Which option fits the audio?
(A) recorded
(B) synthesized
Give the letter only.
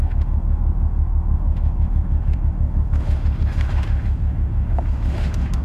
B